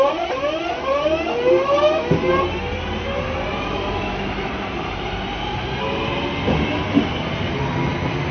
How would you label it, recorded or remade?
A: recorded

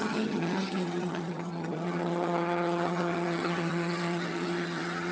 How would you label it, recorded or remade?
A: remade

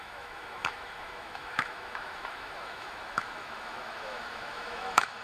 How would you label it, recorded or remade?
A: remade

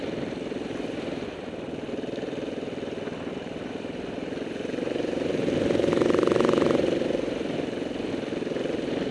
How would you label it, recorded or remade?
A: remade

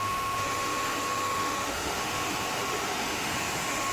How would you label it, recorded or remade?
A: remade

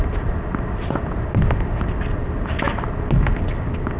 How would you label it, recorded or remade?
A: recorded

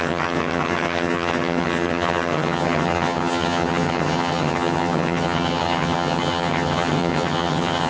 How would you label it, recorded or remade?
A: remade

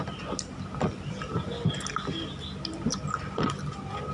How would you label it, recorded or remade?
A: recorded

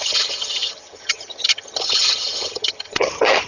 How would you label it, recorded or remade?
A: remade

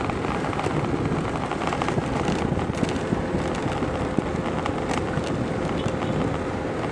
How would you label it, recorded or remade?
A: recorded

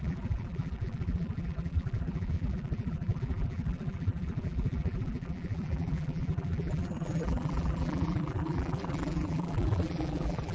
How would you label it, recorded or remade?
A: remade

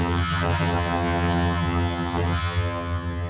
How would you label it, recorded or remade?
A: remade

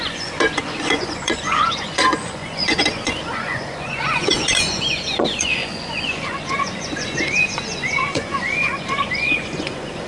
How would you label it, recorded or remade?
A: remade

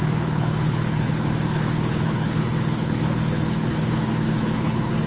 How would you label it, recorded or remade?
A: remade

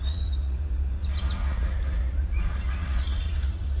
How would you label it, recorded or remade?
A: remade